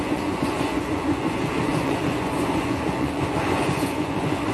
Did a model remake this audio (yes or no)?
yes